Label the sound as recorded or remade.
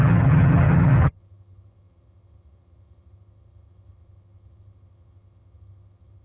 remade